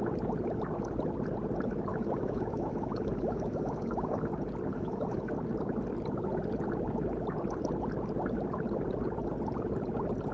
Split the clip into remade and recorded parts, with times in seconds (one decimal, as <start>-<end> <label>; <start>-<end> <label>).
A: 0.0-1.9 recorded; 1.9-4.3 remade; 4.3-4.7 recorded; 4.7-5.3 remade; 5.3-10.3 recorded